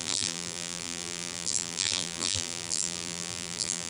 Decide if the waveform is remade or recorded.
remade